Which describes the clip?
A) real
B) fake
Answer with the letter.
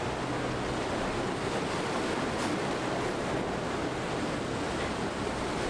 A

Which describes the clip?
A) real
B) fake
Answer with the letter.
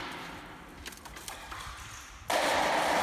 A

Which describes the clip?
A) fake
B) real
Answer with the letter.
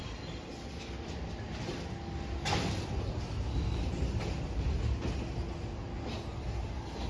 B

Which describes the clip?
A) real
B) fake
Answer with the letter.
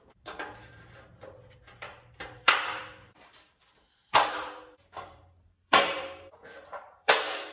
B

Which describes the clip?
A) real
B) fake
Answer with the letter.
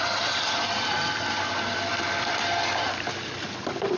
B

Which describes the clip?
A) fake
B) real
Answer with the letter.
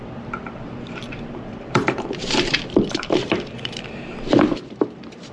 A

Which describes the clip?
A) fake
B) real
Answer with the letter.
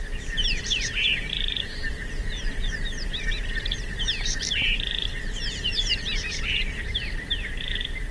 A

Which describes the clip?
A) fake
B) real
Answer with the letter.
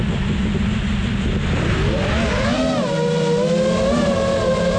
B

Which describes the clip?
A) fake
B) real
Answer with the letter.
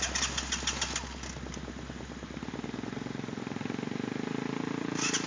B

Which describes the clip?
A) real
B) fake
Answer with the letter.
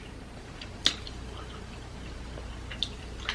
B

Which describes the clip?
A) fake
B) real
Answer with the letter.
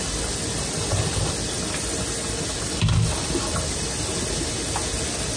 B